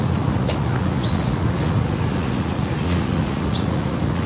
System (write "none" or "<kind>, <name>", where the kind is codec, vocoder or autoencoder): vocoder, Vocos